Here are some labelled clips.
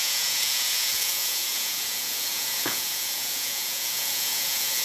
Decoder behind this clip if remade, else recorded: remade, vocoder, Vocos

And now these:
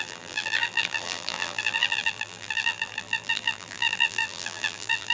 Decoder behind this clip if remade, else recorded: remade, vocoder, BigVGAN v2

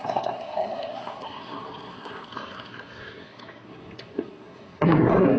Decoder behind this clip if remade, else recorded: remade, codec, SNAC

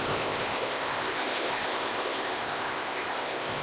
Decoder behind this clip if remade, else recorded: remade, codec, ZipCodec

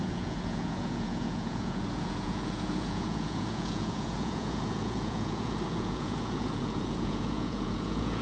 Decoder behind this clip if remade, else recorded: remade, vocoder, Vocos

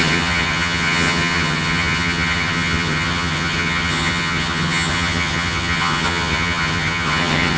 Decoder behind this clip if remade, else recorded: remade, vocoder, HiFi-GAN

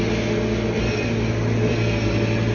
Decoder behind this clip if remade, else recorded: recorded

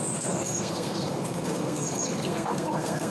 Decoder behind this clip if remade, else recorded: remade, codec, SNAC